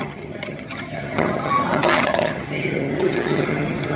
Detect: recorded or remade remade